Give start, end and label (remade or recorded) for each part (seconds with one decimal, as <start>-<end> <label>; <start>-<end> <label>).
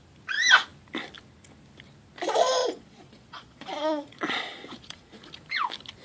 0.0-2.6 recorded; 2.6-5.3 remade; 5.3-6.0 recorded